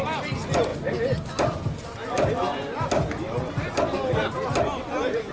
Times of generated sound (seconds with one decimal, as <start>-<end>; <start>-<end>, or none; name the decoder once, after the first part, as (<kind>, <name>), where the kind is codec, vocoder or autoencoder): none